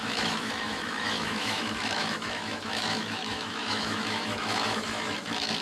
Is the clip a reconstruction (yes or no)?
yes